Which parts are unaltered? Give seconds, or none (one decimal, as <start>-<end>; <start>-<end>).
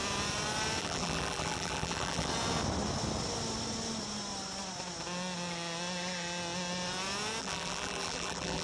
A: 0.0-0.8; 2.3-7.4